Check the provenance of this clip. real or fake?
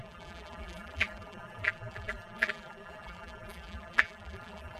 fake